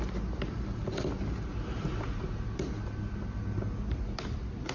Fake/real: real